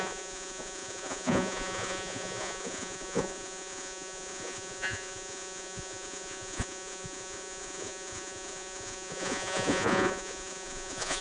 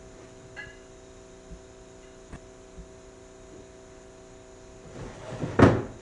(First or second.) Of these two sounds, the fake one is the first